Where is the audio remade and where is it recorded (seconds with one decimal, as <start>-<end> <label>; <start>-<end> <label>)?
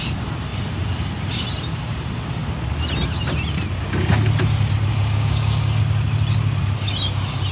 0.0-4.9 recorded; 4.9-5.8 remade; 5.8-7.5 recorded